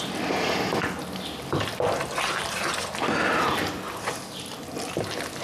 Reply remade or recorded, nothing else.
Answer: recorded